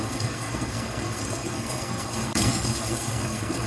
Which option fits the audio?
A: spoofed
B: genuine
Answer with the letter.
A